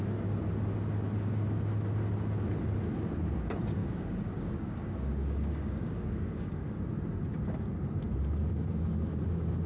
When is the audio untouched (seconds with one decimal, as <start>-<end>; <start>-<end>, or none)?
0.0-3.8; 6.9-9.7